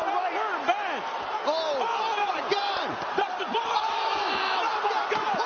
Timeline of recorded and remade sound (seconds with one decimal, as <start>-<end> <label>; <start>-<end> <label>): 0.0-2.2 recorded; 2.2-5.5 remade